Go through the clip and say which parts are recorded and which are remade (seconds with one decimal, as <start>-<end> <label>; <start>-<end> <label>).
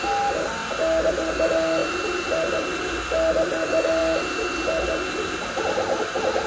0.0-6.5 recorded